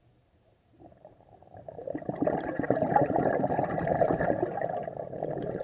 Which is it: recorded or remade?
remade